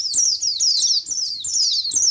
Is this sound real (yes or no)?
yes